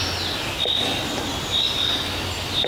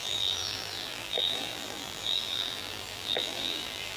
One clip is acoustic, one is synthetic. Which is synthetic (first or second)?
second